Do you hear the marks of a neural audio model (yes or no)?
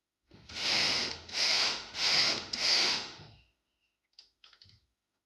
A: yes